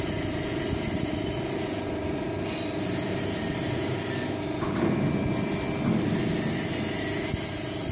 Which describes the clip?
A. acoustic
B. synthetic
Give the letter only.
A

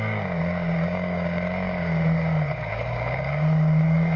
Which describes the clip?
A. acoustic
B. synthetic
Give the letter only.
B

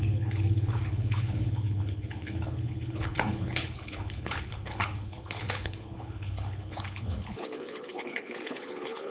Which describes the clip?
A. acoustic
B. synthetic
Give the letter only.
B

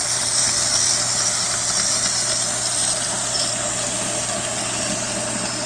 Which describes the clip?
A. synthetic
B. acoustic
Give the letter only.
B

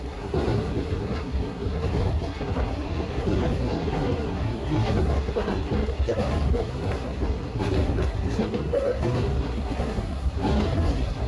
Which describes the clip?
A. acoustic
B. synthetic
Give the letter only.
B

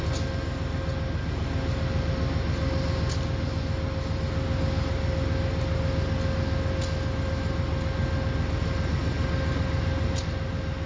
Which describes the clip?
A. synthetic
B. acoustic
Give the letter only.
B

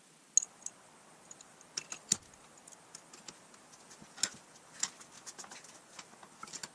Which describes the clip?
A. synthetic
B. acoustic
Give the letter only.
B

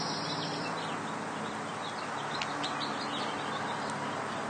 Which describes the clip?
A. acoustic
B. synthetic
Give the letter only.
A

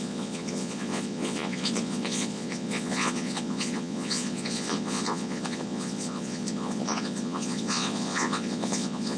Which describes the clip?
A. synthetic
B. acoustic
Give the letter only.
A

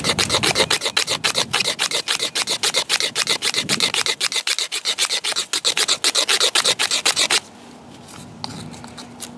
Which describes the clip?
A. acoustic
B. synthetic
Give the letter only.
A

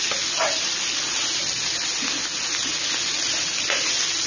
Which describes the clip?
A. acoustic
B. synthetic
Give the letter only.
A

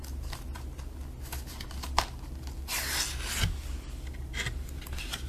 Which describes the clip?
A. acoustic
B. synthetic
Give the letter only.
A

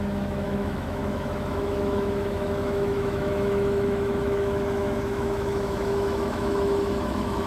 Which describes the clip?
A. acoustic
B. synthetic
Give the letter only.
B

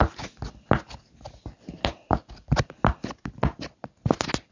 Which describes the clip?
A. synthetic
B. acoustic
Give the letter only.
B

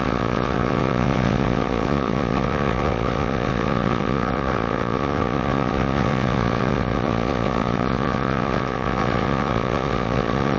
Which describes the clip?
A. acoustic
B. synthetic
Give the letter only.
B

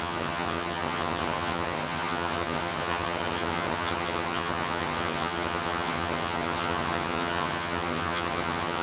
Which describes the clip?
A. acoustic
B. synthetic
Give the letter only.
B